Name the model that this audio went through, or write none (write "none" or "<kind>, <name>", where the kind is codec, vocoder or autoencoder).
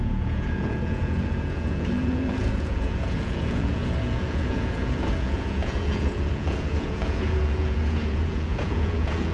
vocoder, Vocos